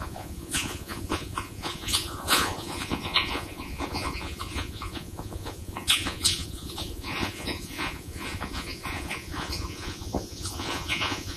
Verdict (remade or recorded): remade